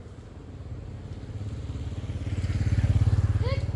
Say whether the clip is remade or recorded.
recorded